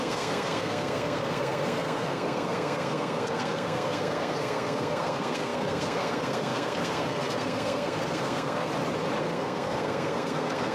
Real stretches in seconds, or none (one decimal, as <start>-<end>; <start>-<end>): 8.7-9.2